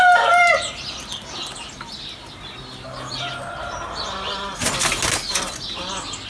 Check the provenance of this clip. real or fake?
real